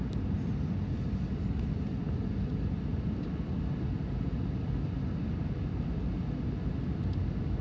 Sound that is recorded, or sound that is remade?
recorded